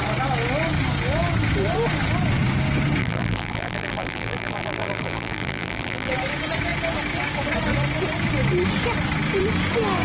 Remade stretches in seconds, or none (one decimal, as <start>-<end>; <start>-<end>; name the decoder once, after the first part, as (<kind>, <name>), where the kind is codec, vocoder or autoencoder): 3.0-6.1 (vocoder, BigVGAN v2)